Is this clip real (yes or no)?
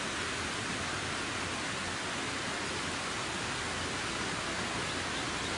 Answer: yes